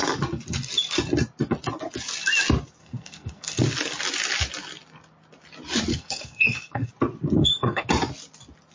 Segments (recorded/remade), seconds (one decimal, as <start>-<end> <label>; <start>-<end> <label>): 0.0-2.8 recorded; 2.8-3.6 remade; 3.6-5.9 recorded; 5.9-6.9 remade; 6.9-7.4 recorded; 7.4-7.9 remade; 7.9-8.7 recorded

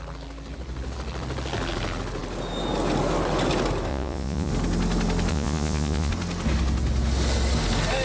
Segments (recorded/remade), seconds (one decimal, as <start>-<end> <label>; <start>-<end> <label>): 0.0-3.9 recorded; 3.9-4.5 remade; 4.5-5.3 recorded; 5.3-6.1 remade; 6.1-8.0 recorded

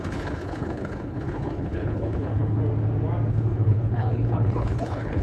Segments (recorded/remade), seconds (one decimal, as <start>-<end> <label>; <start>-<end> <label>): 0.0-2.6 remade; 2.6-3.3 recorded; 3.3-5.2 remade

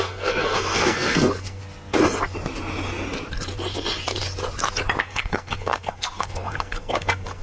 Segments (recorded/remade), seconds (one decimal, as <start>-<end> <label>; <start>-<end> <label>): 0.0-1.6 remade; 1.6-5.0 recorded; 5.0-7.4 remade

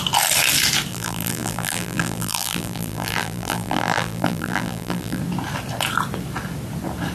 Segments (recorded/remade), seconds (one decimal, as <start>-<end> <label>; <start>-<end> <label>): 0.0-0.9 recorded; 0.9-5.2 remade; 5.2-7.1 recorded

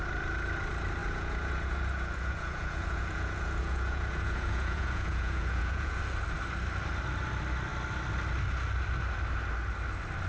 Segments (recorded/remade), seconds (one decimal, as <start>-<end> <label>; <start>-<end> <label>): 0.0-1.0 recorded; 1.0-6.0 remade; 6.0-10.3 recorded